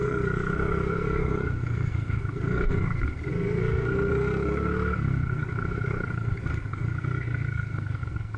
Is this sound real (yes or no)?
no